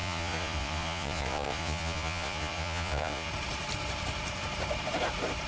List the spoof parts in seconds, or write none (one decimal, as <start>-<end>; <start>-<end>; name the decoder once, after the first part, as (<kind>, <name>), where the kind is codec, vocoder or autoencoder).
0.0-3.3 (vocoder, Vocos)